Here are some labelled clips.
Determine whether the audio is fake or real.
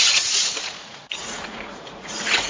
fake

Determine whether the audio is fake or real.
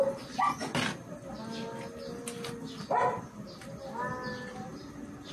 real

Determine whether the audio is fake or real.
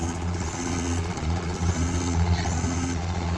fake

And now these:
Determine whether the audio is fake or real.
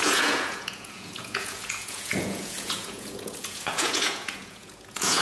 fake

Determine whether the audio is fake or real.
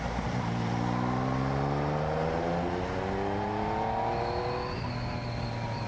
real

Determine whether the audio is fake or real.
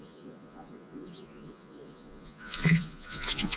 fake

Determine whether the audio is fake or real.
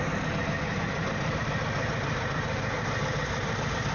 real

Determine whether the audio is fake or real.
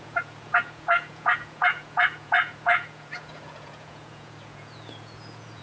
fake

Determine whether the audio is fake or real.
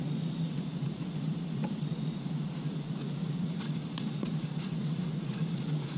fake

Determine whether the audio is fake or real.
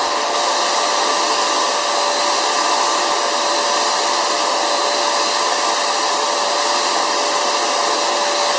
real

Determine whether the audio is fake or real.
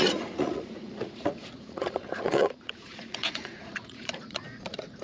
fake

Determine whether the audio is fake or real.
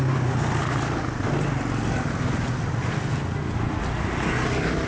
real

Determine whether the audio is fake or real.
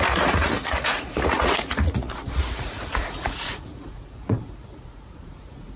fake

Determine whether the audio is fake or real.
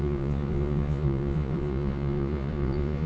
fake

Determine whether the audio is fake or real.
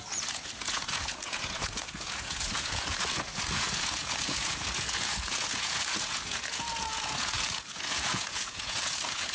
fake